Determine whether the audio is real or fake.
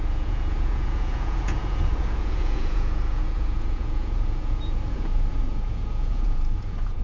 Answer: fake